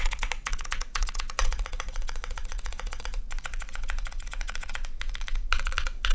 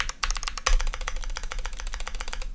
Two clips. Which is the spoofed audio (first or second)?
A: first